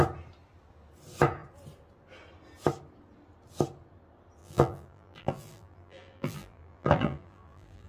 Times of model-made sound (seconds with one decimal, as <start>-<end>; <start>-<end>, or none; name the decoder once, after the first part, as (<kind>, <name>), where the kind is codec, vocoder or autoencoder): 4.4-7.9 (vocoder, BigVGAN v2)